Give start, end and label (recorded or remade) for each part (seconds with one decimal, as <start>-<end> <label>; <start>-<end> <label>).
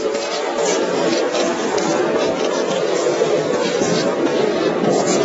0.0-5.2 recorded